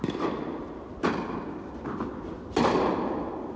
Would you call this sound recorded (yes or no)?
yes